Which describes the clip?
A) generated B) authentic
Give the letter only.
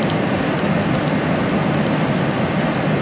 B